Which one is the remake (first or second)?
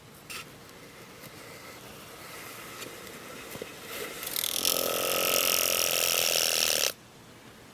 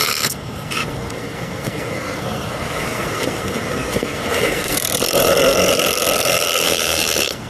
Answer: second